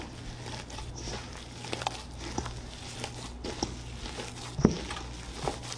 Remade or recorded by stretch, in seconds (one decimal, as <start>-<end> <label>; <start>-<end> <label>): 0.0-5.8 recorded